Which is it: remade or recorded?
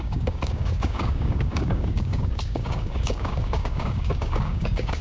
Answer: remade